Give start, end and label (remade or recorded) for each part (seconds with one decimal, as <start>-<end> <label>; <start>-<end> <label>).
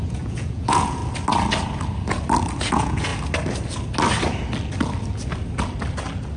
0.0-1.0 remade; 1.0-2.6 recorded; 2.6-3.1 remade; 3.1-6.4 recorded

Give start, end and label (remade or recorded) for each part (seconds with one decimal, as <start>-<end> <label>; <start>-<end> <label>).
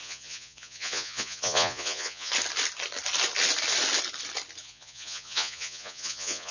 0.0-2.3 remade; 2.3-4.6 recorded; 4.6-6.5 remade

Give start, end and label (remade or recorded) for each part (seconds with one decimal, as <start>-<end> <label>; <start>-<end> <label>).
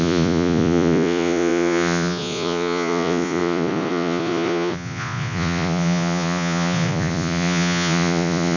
0.0-8.6 remade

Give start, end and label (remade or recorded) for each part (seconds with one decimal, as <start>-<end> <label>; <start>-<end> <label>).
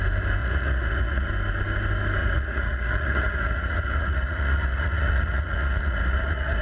0.0-0.4 recorded; 0.4-1.3 remade; 1.3-2.2 recorded; 2.2-6.6 remade